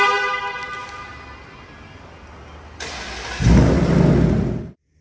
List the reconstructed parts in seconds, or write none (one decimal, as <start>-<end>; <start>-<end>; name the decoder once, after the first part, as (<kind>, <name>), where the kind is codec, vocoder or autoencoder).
none